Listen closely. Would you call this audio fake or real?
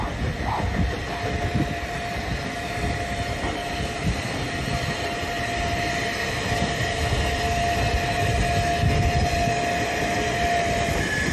real